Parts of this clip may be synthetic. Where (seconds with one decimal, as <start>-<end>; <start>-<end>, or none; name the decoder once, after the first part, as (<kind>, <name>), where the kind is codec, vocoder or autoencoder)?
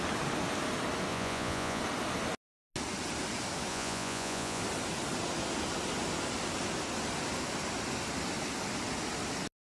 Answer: 1.1-1.8 (vocoder, Vocos); 3.7-4.6